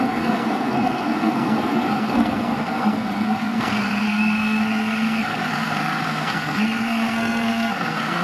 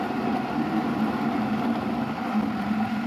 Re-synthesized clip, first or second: first